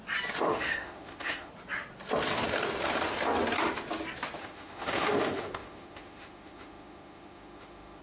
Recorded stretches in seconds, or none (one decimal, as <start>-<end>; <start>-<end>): 0.0-0.4; 1.5-4.4